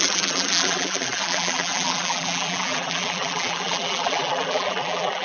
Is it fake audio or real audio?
fake